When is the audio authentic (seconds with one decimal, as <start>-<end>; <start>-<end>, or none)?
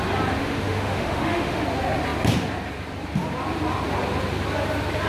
0.0-0.4; 1.6-5.1